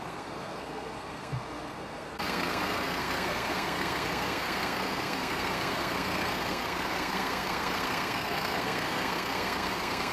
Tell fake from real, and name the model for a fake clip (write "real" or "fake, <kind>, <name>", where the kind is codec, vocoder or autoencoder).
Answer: fake, codec, SNAC